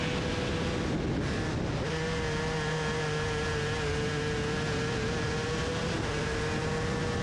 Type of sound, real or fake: real